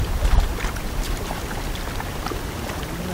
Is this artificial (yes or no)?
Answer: no